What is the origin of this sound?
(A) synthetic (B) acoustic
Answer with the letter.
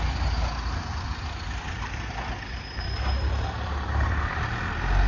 A